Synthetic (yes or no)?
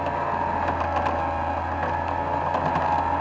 no